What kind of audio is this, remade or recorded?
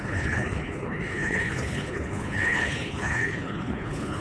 remade